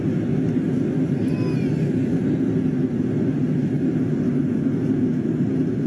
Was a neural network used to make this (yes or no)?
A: no